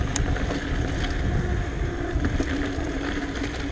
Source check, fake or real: real